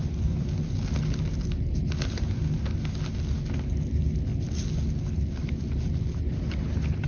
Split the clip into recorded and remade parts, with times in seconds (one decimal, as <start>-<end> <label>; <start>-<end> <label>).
0.0-7.1 recorded